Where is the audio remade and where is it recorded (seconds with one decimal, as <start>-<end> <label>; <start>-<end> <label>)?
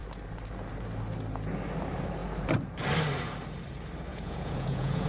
0.0-4.1 recorded; 4.1-5.1 remade